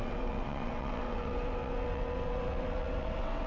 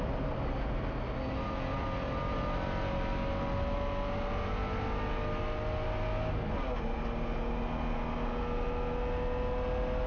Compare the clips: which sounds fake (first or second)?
first